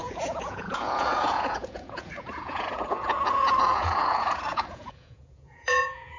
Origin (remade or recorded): remade